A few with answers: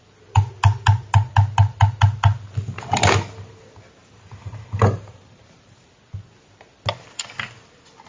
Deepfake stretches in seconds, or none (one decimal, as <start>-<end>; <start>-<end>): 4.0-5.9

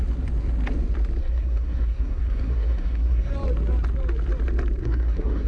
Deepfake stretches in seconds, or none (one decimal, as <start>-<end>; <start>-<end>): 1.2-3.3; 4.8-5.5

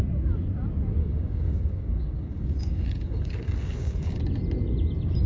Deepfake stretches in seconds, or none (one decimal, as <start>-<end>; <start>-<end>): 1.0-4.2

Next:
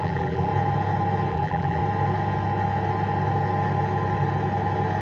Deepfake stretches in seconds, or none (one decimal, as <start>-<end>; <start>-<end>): 0.0-0.5; 1.3-1.8